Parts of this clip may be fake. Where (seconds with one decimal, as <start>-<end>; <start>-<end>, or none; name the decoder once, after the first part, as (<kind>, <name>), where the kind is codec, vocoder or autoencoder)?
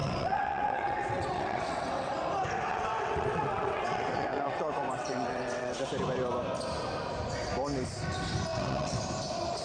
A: 0.0-2.1 (vocoder, WaveNeXt); 2.7-5.9; 8.5-9.0